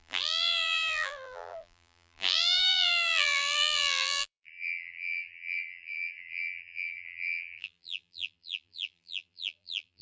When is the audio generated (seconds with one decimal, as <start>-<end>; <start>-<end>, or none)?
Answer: 0.0-10.0